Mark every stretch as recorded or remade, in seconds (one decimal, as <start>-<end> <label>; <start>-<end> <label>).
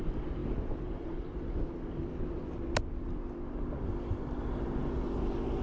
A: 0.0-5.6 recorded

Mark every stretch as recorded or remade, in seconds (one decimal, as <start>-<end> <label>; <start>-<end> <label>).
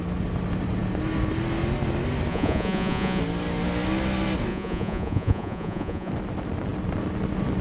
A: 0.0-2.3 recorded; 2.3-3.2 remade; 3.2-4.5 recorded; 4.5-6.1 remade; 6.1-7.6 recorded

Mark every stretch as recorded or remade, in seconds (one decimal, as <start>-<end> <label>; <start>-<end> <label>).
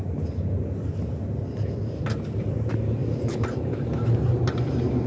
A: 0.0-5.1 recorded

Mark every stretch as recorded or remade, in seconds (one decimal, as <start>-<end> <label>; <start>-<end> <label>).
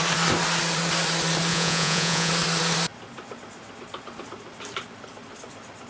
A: 0.0-1.5 recorded; 1.5-2.3 remade; 2.3-5.9 recorded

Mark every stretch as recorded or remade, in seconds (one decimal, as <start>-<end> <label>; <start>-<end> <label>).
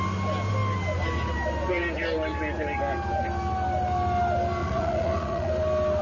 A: 0.0-4.6 recorded; 4.6-5.5 remade; 5.5-6.0 recorded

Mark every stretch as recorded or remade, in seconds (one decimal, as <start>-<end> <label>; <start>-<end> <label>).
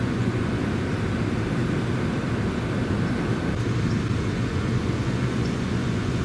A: 0.0-0.6 remade; 0.6-4.3 recorded; 4.3-6.2 remade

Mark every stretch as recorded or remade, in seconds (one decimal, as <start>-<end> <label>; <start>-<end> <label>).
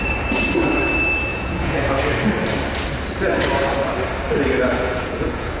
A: 0.0-1.3 recorded; 1.3-1.8 remade; 1.8-4.7 recorded; 4.7-5.6 remade